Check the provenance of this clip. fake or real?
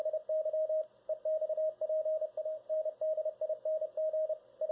real